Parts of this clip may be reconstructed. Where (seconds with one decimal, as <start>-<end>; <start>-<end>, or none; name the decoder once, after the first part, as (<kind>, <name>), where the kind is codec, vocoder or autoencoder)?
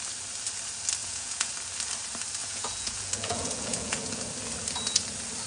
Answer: 1.0-1.5 (vocoder, Vocos); 2.4-4.2